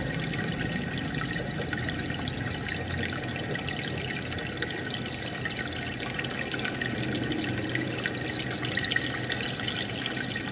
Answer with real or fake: real